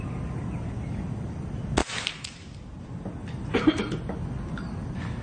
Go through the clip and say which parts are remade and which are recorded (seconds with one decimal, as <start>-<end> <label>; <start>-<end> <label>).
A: 0.0-1.8 recorded; 1.8-2.8 remade; 2.8-3.2 recorded; 3.2-3.8 remade; 3.8-5.2 recorded